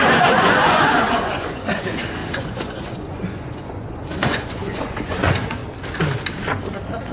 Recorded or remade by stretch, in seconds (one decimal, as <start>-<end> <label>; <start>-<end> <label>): 0.0-5.6 remade; 5.6-7.1 recorded